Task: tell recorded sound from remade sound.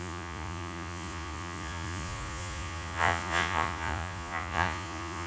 remade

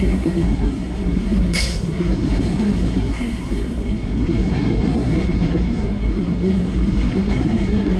remade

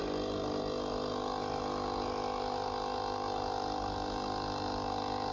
recorded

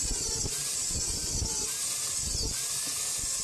recorded